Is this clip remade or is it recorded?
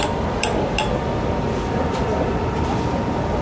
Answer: recorded